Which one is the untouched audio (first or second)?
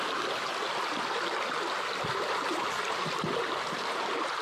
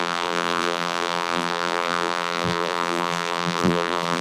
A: first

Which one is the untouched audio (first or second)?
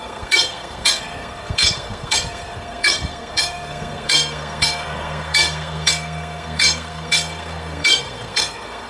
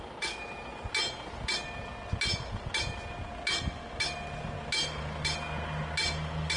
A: second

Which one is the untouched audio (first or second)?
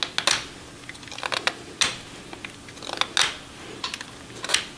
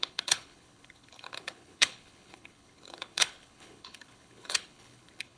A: first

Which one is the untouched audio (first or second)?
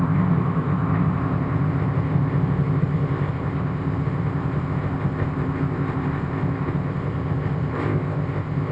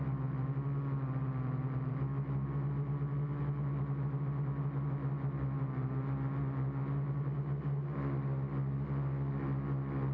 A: second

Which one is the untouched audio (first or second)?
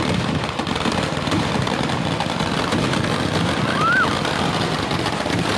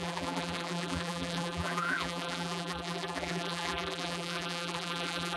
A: first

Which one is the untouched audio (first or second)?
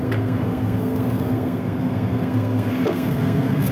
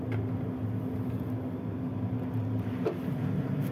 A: second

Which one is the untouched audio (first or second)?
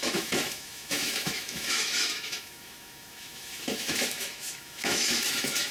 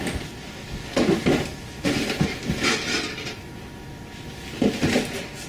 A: second